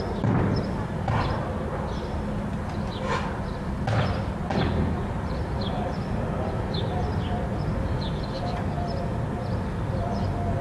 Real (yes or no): yes